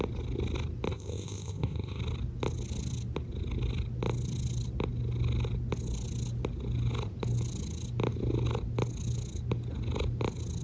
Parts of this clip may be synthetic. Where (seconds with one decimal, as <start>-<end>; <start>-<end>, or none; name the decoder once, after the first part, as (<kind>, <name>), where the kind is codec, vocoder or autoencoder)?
0.9-2.0 (codec, ZipCodec)